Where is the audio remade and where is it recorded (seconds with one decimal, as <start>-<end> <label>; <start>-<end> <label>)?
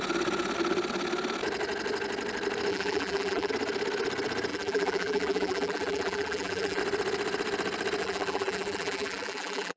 0.0-2.7 recorded; 2.7-3.5 remade; 3.5-4.5 recorded; 4.5-6.8 remade; 6.8-8.0 recorded; 8.0-9.8 remade